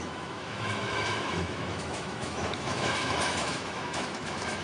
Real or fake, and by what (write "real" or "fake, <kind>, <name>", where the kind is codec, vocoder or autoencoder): fake, autoencoder, DAC-VAE